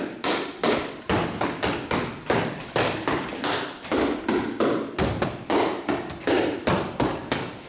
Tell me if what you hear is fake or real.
real